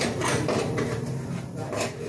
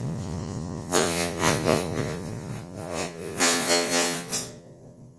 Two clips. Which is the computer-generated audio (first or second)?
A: second